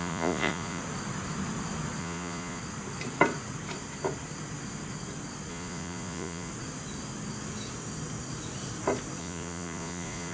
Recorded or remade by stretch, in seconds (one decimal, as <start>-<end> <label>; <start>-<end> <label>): 0.0-0.8 remade; 0.8-2.0 recorded; 2.0-2.6 remade; 2.6-5.5 recorded; 5.5-6.5 remade; 6.5-9.2 recorded; 9.2-10.3 remade